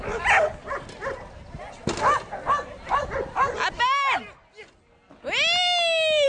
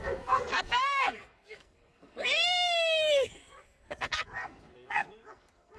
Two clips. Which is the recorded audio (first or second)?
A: first